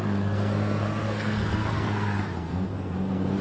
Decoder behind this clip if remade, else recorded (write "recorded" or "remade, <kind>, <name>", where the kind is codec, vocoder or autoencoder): remade, codec, SNAC